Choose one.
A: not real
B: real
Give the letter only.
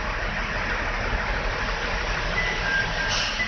B